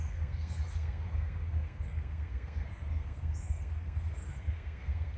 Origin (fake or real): fake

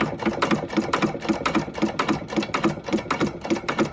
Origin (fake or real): real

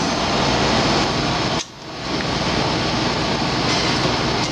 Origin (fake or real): real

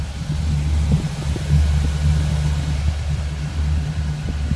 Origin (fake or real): real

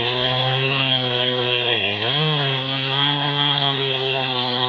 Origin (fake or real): fake